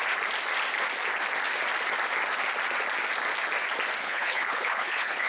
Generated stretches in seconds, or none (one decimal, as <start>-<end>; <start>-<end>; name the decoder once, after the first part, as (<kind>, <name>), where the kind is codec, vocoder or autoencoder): 4.0-5.3 (codec, HILCodec)